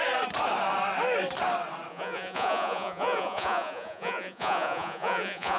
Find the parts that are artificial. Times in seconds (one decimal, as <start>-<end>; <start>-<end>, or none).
1.9-5.6